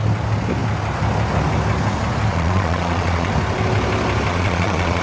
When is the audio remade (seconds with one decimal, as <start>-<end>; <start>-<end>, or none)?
2.3-3.3; 4.3-5.0